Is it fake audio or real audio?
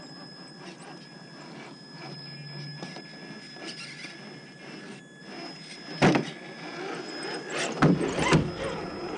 real